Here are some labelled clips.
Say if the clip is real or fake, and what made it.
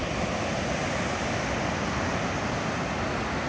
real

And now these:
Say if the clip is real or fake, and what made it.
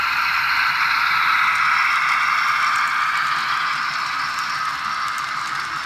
real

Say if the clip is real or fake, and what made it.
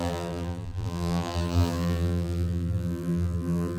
fake, vocoder, BigVGAN v2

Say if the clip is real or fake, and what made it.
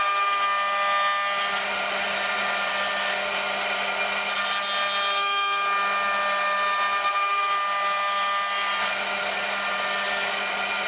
real